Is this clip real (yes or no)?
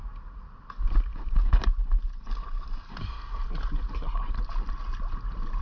yes